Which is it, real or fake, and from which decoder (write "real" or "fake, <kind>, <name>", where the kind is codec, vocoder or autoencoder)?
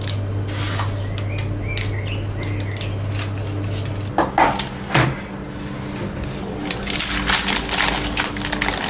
real